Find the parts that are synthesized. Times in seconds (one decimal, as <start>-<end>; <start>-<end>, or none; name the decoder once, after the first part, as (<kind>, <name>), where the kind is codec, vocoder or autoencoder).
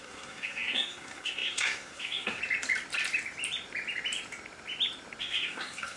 0.0-2.4 (codec, SNAC); 5.2-6.0